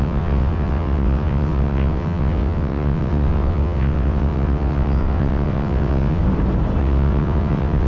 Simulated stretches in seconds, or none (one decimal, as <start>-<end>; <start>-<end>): 0.0-6.2; 6.8-7.9

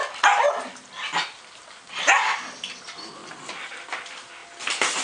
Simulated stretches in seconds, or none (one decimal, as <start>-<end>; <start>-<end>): 3.2-3.7

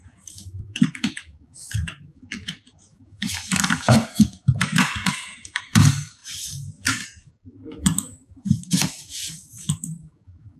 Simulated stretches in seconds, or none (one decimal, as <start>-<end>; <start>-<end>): 0.0-10.6

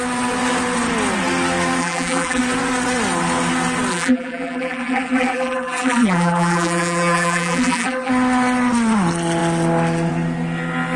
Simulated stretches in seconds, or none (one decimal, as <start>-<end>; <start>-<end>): 1.8-2.4; 3.9-8.1

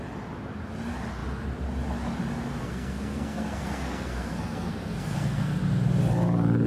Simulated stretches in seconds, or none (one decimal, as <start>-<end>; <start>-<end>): 2.6-5.6

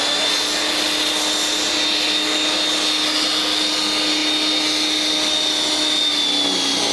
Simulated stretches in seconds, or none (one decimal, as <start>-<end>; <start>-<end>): none

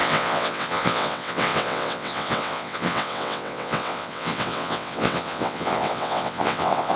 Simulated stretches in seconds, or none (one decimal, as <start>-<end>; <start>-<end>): 0.0-7.0